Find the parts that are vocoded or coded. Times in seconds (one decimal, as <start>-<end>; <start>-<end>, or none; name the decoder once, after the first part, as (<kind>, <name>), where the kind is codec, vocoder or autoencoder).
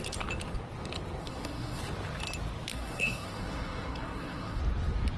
1.2-1.8 (codec, SNAC); 2.7-4.6